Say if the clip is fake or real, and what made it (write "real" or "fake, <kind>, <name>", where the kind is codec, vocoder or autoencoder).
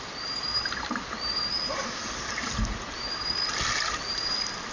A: real